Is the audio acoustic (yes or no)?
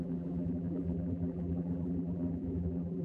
no